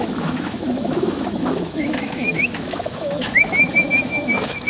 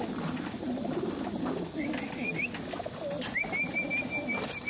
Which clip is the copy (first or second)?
first